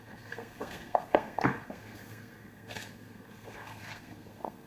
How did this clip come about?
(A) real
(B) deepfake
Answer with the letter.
B